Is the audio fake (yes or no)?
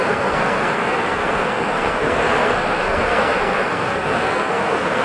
yes